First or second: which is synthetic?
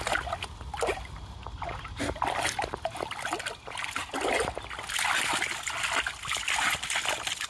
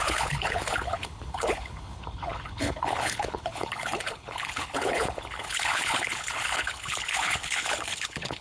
second